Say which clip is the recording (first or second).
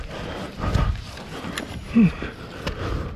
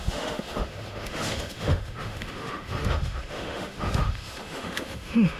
first